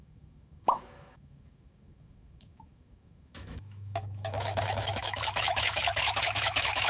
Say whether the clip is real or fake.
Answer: fake